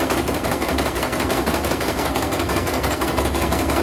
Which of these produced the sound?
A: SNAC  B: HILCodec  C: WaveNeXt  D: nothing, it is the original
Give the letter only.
A